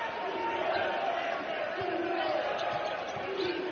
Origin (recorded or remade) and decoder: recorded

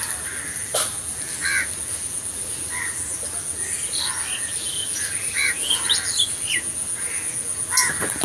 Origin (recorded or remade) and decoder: remade, vocoder, BigVGAN v2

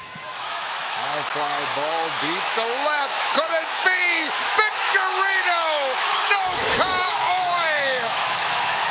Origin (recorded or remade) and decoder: remade, autoencoder, DAC-VAE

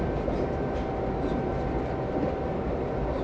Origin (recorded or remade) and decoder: recorded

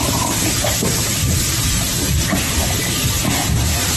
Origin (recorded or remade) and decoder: remade, vocoder, BigVGAN v2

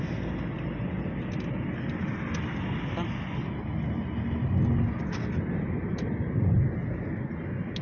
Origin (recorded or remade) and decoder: recorded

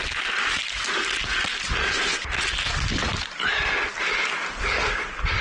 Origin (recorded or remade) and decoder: recorded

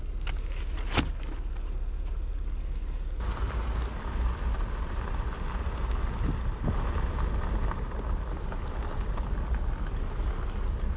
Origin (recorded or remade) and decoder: recorded